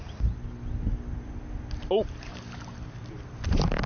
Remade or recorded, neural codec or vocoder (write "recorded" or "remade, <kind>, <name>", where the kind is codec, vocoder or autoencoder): recorded